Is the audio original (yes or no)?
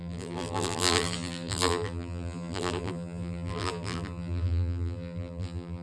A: no